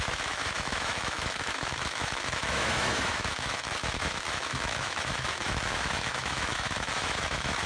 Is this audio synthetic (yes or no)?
yes